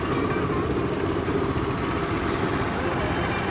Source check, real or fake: real